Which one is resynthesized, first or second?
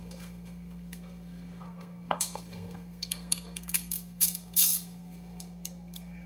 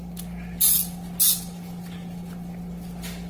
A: first